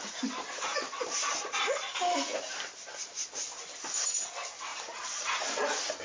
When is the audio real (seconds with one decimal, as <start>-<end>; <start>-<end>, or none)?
0.0-6.0